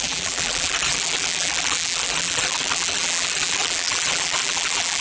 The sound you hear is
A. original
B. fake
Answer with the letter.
B